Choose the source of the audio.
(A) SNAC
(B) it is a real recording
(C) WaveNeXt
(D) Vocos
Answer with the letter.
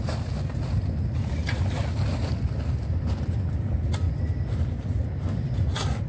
B